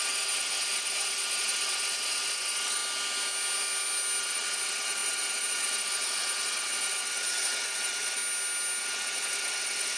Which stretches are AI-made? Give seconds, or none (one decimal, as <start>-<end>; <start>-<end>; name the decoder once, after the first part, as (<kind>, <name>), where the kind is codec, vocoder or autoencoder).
0.0-2.8 (vocoder, WaveNeXt); 4.2-8.2; 8.8-10.0